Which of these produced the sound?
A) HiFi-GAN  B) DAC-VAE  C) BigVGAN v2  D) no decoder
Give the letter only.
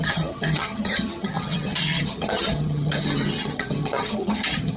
A